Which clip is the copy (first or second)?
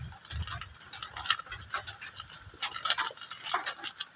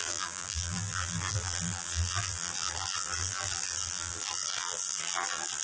second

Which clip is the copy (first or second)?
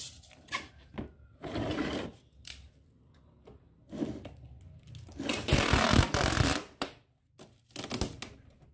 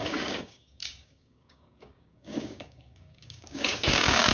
second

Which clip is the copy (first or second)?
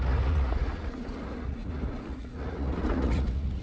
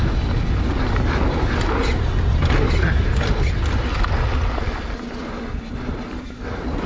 first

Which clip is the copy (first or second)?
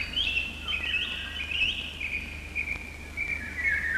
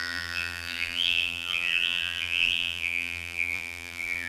second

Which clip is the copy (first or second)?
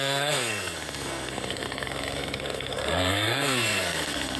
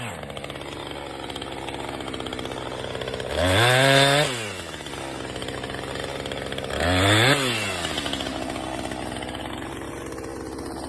first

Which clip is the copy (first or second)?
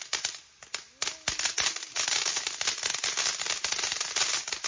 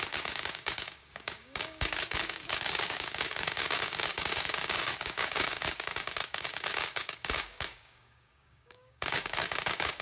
second